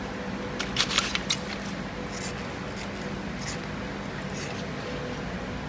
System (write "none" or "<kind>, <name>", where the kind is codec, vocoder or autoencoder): none